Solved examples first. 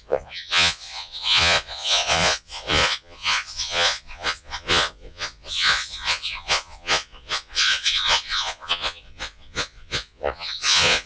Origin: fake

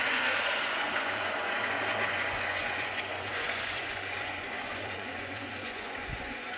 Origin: fake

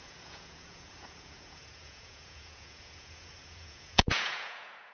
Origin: fake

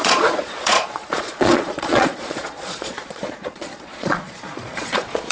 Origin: fake